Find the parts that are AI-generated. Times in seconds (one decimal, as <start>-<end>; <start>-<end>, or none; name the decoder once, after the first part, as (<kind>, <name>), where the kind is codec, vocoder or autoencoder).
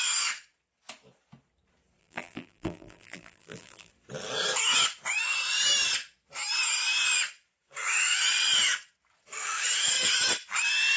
2.0-3.9 (vocoder, BigVGAN v2)